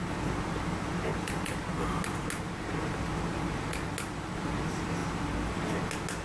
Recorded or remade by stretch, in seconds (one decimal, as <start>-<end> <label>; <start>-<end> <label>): 0.0-6.2 recorded